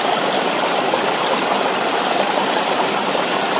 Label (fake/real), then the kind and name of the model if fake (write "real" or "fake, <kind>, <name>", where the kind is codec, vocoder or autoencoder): real